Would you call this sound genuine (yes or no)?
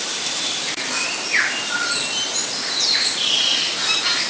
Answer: yes